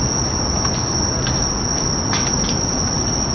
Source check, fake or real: real